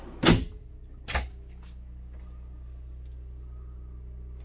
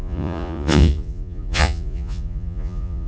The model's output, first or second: second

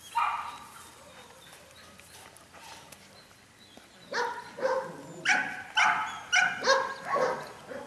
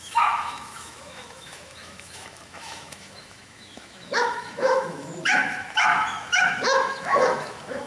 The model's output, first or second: second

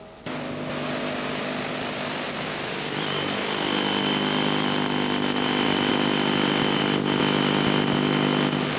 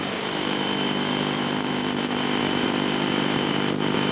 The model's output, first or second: second